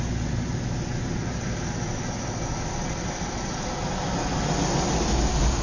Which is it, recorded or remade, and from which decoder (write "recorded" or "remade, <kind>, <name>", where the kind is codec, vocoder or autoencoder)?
recorded